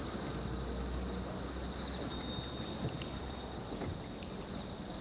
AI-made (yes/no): no